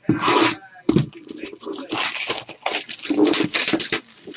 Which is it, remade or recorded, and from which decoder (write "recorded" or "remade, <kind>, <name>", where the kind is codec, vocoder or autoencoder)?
remade, vocoder, BigVGAN v2